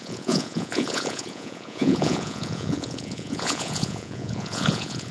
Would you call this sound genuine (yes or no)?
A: no